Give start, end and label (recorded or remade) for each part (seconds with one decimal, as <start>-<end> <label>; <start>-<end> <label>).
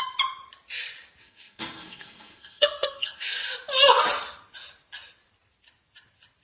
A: 0.0-1.2 recorded; 1.2-3.4 remade; 3.4-6.4 recorded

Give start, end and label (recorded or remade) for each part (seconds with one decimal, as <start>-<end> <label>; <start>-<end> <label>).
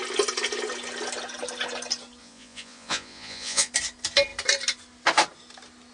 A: 0.0-2.2 recorded; 2.2-3.7 remade; 3.7-5.9 recorded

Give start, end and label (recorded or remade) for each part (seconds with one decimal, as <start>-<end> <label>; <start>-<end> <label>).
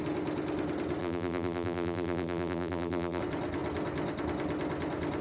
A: 0.0-1.0 recorded; 1.0-3.2 remade; 3.2-5.2 recorded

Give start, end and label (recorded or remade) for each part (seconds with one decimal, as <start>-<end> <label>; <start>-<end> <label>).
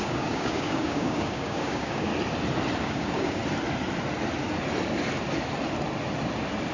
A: 0.0-2.1 remade; 2.1-2.8 recorded; 2.8-3.4 remade; 3.4-6.7 recorded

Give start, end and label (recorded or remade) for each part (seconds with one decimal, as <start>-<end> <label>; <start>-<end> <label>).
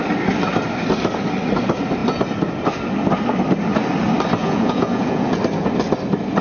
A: 0.0-4.4 recorded; 4.4-5.4 remade; 5.4-6.4 recorded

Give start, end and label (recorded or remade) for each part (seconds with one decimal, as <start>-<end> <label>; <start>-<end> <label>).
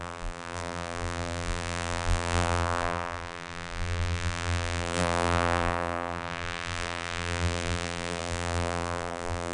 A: 0.0-9.5 remade